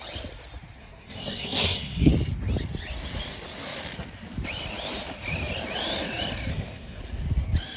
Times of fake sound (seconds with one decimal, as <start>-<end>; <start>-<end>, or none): 0.8-2.1; 6.5-7.0

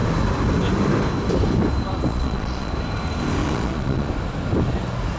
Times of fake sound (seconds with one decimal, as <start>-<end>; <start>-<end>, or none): 2.1-2.7; 3.4-4.1

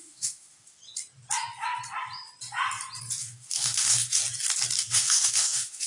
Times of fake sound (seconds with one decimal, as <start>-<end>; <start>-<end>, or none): 0.0-0.8; 3.2-4.2; 4.8-5.9

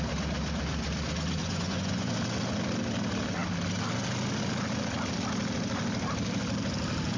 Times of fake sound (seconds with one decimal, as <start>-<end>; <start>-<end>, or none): 1.4-2.1

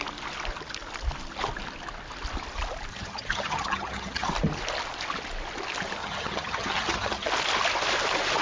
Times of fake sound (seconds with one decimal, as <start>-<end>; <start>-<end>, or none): 2.9-4.3; 6.0-7.3

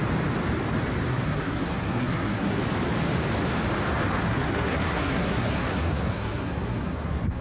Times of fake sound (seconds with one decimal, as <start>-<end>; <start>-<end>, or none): 1.1-2.6; 4.3-7.4

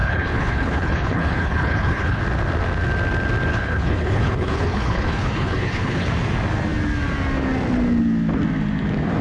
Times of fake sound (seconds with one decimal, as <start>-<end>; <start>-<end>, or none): 0.0-2.2; 3.5-6.1